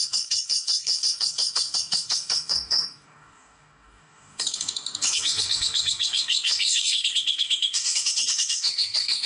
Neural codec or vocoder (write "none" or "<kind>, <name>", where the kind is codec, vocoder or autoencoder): codec, DAC